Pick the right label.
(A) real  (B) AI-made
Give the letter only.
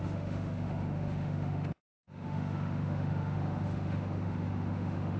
B